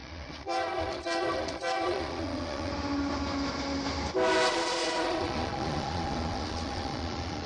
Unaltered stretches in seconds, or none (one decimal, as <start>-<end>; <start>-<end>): 2.7-4.5